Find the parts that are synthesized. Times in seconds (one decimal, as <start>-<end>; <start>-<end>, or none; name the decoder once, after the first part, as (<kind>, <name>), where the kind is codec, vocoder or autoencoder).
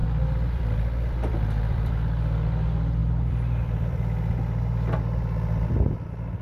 0.0-1.9 (vocoder, BigVGAN v2); 3.0-4.0